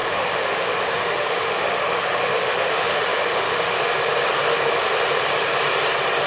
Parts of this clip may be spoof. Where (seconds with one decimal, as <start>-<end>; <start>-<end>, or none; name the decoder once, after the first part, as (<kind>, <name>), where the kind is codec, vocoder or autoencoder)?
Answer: 0.0-3.8 (autoencoder, DAC-VAE)